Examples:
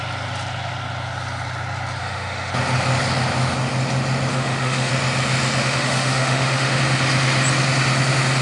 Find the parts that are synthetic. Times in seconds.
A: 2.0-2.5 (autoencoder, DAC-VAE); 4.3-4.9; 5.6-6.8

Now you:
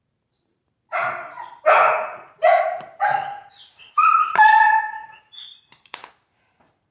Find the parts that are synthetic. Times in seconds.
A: 0.0-1.0 (vocoder, BigVGAN v2); 3.5-6.9

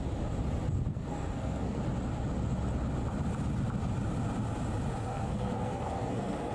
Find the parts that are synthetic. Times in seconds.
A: 0.9-1.8 (codec, SNAC); 5.1-6.5

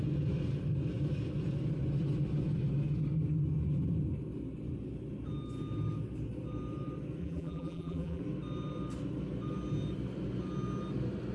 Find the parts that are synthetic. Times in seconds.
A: 7.2-8.2 (vocoder, BigVGAN v2)